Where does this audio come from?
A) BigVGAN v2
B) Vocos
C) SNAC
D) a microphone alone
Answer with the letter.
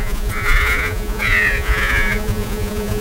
B